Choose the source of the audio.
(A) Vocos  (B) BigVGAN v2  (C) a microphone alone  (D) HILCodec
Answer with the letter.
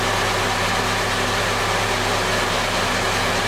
C